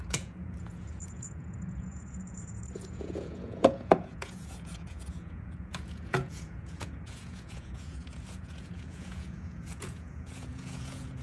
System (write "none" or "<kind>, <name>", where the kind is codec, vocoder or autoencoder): vocoder, Vocos